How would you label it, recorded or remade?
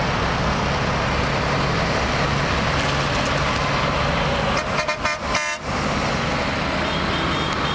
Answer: recorded